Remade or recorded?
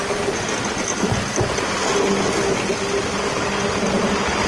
recorded